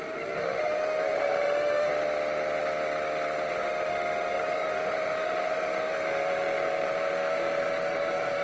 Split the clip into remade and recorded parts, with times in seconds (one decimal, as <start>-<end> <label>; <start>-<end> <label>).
0.0-1.9 remade; 1.9-3.5 recorded; 3.5-8.4 remade